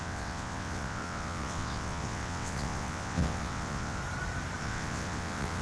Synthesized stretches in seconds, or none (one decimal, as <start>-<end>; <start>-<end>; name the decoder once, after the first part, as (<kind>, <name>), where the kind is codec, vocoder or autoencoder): 0.0-4.0 (vocoder, WaveNeXt); 4.6-5.6